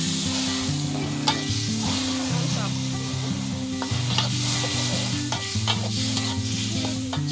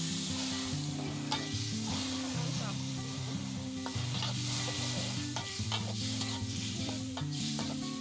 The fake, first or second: second